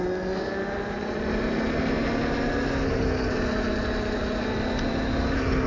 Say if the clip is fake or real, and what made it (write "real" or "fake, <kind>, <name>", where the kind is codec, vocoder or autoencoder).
real